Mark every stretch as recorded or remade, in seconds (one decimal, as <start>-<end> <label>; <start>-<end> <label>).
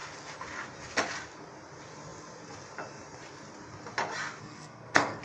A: 0.0-4.4 recorded; 4.4-5.2 remade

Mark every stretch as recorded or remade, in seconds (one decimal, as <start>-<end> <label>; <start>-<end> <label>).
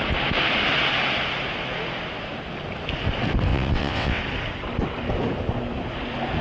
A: 0.0-3.5 recorded; 3.5-4.2 remade; 4.2-6.4 recorded